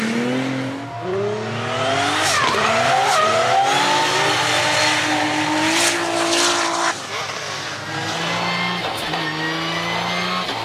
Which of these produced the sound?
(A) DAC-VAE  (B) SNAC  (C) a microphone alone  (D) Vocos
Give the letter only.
C